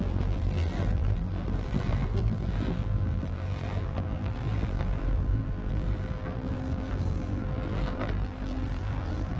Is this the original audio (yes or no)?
no